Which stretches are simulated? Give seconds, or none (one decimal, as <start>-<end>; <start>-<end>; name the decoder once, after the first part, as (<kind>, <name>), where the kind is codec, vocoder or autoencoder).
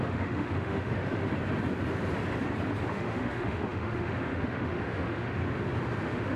0.0-1.3 (autoencoder, DAC-VAE); 2.9-5.4; 6.0-6.4